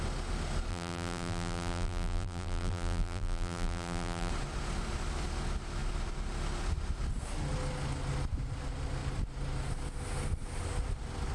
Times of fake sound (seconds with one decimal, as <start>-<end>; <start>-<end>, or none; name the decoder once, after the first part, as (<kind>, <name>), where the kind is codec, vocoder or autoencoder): 0.7-4.3 (vocoder, BigVGAN v2)